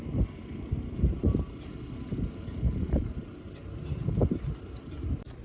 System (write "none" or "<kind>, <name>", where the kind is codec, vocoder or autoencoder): none